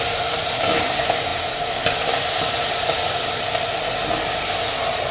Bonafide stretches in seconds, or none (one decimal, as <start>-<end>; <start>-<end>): 0.0-5.1